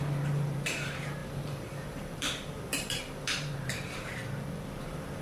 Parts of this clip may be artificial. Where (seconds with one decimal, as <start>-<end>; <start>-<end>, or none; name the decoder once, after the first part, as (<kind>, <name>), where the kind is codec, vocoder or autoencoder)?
0.0-4.2 (vocoder, BigVGAN v2); 4.8-5.2